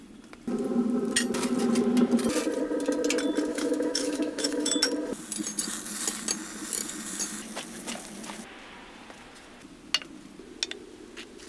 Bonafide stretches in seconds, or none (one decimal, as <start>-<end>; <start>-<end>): 0.0-3.5; 4.8-11.5